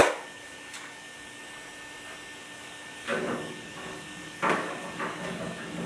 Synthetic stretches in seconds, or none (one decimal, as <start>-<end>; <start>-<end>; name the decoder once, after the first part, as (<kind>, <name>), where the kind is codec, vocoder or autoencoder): 0.0-1.4 (codec, DAC); 2.4-5.9